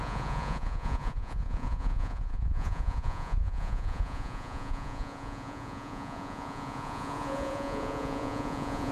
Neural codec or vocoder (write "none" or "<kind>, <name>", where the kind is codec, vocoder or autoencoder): vocoder, Vocos